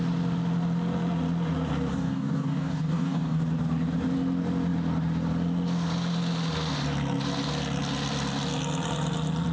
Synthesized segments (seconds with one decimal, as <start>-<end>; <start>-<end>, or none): 1.9-3.4